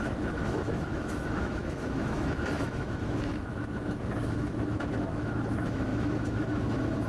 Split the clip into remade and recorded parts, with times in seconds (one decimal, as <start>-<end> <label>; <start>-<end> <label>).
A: 0.0-7.1 remade